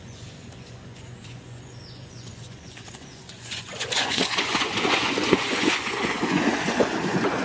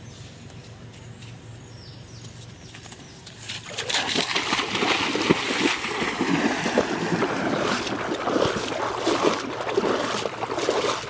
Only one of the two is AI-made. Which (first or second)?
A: first